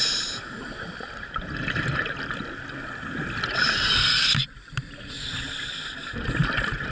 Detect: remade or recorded recorded